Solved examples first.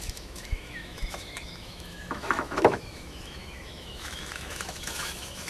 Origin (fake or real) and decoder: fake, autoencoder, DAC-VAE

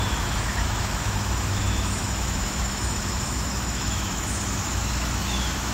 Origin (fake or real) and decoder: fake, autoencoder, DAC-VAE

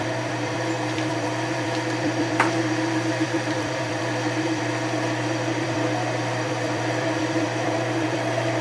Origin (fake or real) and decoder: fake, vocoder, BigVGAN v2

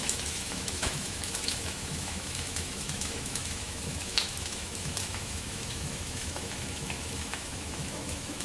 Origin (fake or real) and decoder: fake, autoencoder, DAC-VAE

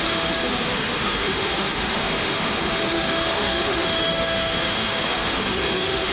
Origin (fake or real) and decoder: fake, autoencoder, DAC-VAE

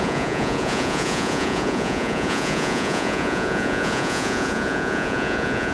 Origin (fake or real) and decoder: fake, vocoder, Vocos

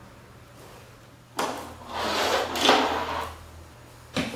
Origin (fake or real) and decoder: real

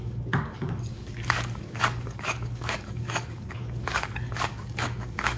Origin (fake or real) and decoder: fake, codec, DAC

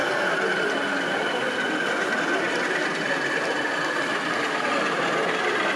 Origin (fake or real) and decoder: real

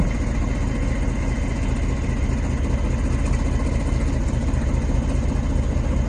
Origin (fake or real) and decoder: real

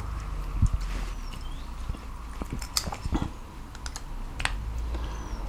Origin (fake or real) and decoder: real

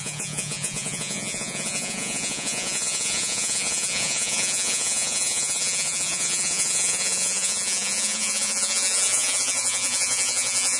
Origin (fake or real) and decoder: fake, vocoder, Vocos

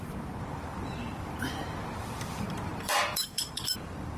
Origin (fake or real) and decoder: fake, vocoder, BigVGAN v2